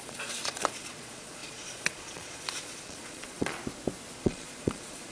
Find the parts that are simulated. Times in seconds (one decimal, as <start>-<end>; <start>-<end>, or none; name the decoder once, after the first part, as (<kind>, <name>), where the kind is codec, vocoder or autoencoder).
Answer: 0.0-3.6 (vocoder, Vocos); 4.2-5.1